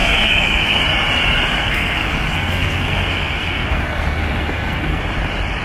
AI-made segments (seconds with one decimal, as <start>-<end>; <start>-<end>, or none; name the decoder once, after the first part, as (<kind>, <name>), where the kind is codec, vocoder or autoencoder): 0.0-0.8 (codec, SNAC); 1.6-5.0